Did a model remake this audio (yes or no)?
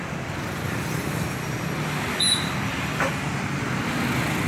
no